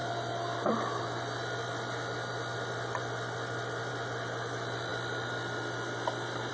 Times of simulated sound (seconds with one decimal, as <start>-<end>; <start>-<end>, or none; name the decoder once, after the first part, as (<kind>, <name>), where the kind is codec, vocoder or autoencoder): none